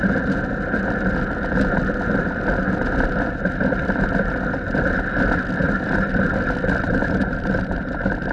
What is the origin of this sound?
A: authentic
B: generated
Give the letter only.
A